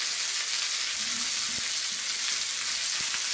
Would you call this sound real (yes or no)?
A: yes